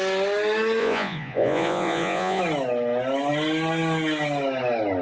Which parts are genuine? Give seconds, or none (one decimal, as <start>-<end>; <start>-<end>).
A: 0.0-0.8; 2.4-5.0